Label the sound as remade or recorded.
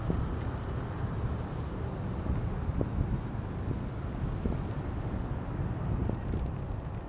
recorded